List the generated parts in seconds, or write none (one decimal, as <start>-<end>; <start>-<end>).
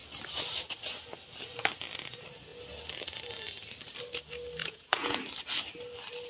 4.6-5.2